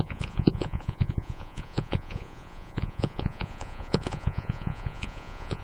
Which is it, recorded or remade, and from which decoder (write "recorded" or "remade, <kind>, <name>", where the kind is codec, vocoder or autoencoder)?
remade, vocoder, Vocos